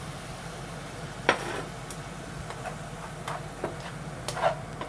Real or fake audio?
fake